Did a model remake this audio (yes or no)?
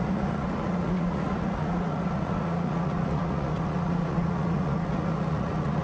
yes